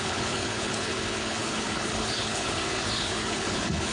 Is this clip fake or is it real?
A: fake